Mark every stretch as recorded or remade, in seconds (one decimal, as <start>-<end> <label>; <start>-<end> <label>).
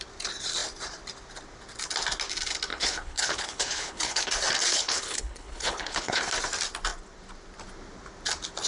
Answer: 0.0-2.7 recorded; 2.7-4.3 remade; 4.3-4.7 recorded; 4.7-6.2 remade; 6.2-8.7 recorded